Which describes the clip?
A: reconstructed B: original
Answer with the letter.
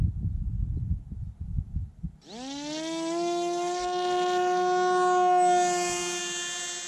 B